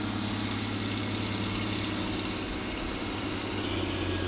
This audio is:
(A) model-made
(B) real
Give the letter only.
B